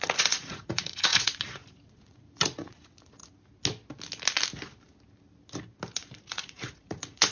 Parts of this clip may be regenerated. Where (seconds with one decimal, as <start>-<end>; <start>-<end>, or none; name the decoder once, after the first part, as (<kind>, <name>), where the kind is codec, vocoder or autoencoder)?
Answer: 0.0-3.2 (vocoder, Vocos); 5.9-7.3